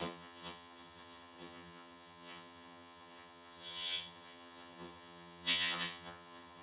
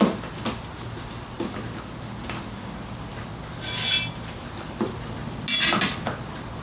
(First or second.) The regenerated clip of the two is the first